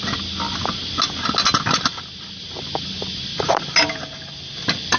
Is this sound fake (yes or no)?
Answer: no